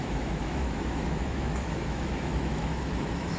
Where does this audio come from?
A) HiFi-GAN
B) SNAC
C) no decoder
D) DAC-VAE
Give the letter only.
D